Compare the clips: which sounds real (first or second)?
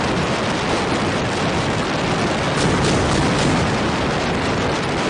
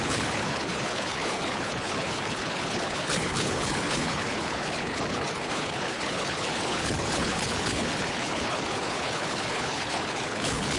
first